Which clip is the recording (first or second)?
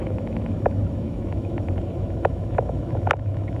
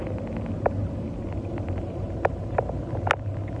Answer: second